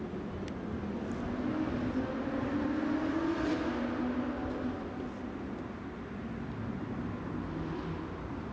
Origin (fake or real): real